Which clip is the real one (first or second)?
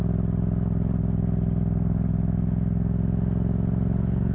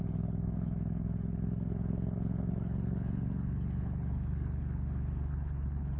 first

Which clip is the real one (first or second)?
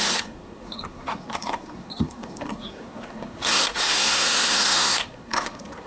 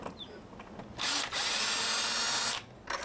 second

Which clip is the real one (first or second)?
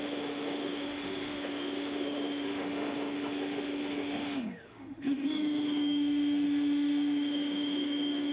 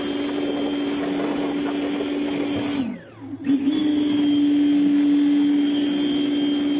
second